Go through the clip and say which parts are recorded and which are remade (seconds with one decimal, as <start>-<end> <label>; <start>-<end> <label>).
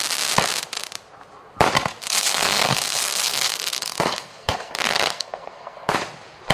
0.0-2.0 recorded; 2.0-5.9 remade; 5.9-6.5 recorded